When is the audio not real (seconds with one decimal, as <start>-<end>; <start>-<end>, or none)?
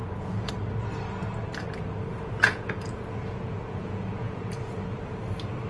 0.0-0.5; 2.1-4.7